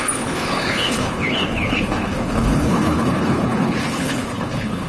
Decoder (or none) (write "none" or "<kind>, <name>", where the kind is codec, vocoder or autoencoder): codec, HILCodec